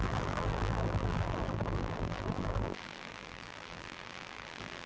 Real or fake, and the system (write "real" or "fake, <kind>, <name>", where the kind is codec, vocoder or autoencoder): fake, vocoder, BigVGAN v2